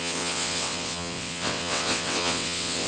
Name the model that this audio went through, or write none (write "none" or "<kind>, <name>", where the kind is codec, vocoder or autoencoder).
vocoder, WaveNeXt